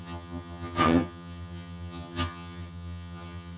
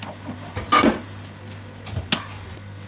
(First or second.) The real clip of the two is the second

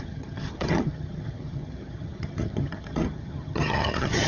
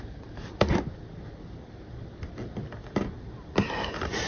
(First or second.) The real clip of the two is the second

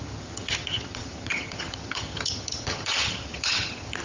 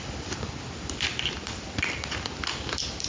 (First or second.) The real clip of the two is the second